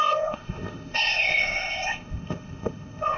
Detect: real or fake fake